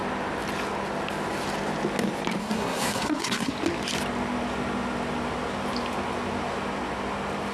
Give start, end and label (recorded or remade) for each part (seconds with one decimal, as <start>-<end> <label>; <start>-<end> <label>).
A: 0.0-2.4 recorded; 2.4-3.5 remade; 3.5-7.5 recorded